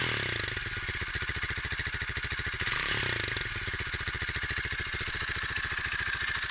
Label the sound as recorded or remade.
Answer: recorded